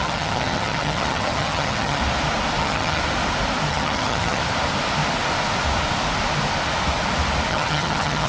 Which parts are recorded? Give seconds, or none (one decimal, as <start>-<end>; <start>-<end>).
2.0-2.6; 3.0-3.7; 4.4-7.5